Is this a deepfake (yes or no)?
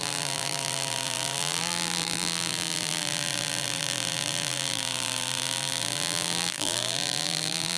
yes